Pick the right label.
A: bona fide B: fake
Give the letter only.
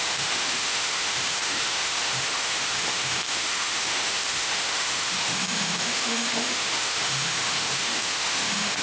B